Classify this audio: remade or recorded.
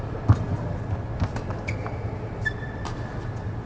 recorded